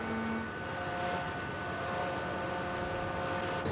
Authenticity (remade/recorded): recorded